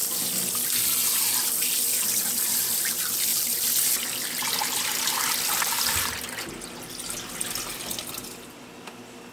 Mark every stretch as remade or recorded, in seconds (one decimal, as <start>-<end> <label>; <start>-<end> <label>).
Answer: 0.0-9.3 recorded